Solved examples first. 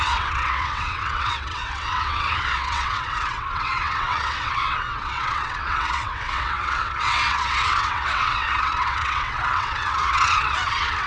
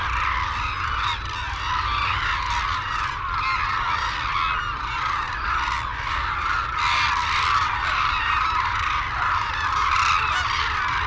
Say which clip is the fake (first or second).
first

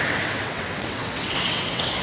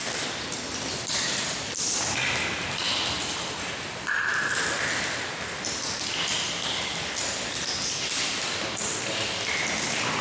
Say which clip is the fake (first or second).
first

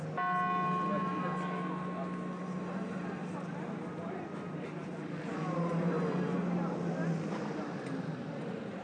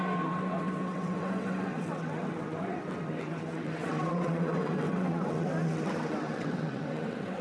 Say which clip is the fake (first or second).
second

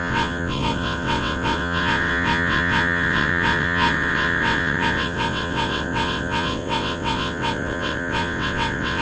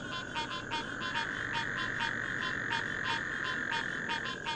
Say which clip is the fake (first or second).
first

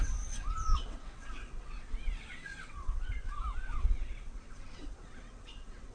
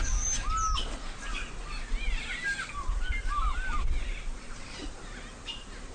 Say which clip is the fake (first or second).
first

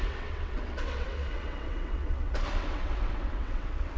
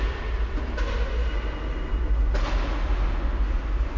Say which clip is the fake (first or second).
first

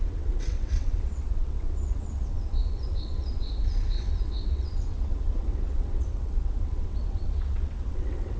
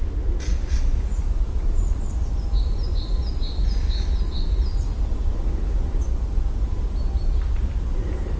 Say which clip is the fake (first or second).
first